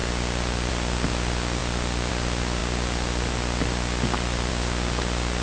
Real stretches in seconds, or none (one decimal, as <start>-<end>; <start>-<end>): 0.0-5.4